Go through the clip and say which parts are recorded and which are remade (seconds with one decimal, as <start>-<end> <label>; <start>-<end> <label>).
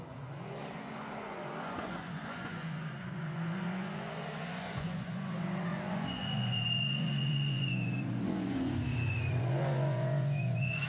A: 0.0-10.9 remade